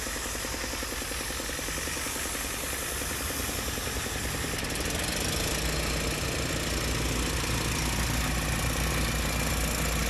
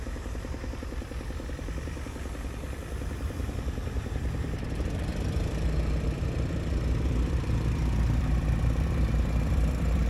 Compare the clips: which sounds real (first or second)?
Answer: first